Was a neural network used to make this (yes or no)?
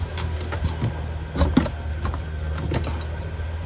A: no